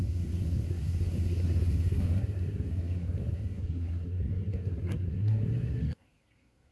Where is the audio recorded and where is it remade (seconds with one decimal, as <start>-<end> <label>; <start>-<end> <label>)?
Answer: 0.0-6.7 remade